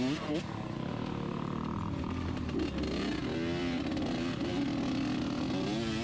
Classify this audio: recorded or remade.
recorded